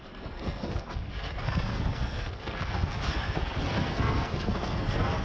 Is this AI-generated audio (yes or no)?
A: yes